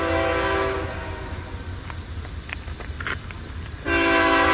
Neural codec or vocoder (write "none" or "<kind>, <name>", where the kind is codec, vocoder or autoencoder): none